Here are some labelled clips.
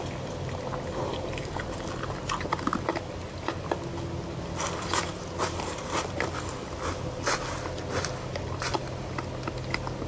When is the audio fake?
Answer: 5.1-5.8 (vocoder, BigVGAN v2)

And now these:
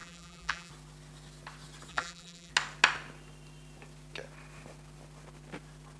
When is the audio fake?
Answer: 0.0-0.7 (vocoder, BigVGAN v2); 1.9-2.5

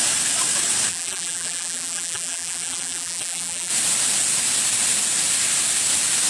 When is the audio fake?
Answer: 0.9-3.7 (vocoder, BigVGAN v2)

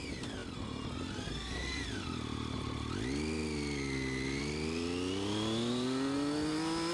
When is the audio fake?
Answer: none

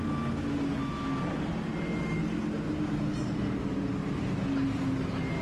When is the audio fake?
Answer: none

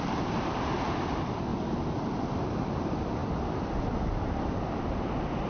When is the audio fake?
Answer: 0.0-1.5 (vocoder, BigVGAN v2); 2.4-3.2; 4.0-5.5

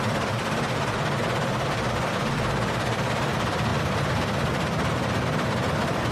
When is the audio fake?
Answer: 0.0-6.1 (vocoder, BigVGAN v2)